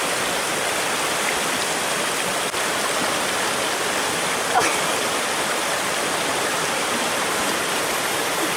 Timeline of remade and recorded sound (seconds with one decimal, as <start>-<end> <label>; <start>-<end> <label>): 0.0-6.3 recorded; 6.3-8.6 remade

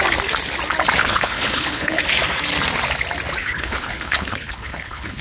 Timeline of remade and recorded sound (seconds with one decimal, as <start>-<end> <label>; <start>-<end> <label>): 0.0-1.0 recorded; 1.0-2.0 remade; 2.0-3.4 recorded; 3.4-5.2 remade